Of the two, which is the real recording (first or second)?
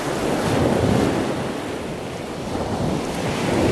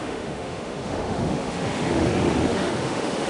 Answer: first